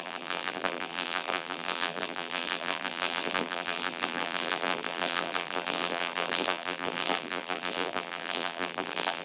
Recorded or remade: remade